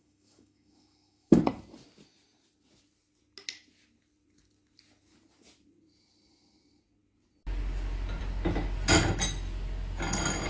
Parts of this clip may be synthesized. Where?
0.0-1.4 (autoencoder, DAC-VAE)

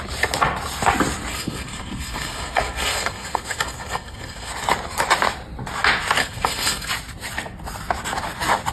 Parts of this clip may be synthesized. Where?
1.3-4.5 (codec, SNAC); 6.2-6.9